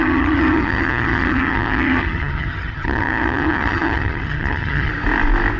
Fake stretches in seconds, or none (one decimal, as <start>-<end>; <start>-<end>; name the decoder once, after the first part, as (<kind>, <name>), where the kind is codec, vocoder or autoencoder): 0.0-4.9 (vocoder, HiFi-GAN)